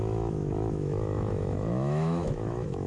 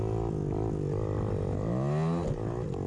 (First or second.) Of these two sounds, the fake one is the first